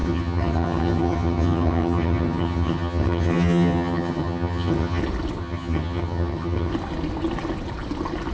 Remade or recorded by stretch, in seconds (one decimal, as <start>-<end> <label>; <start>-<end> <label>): 0.0-5.0 remade; 5.0-5.4 recorded; 5.4-6.7 remade; 6.7-8.3 recorded